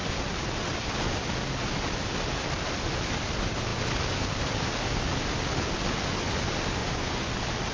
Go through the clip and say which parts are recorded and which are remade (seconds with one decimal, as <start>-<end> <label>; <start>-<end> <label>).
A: 0.0-6.8 recorded; 6.8-7.3 remade; 7.3-7.7 recorded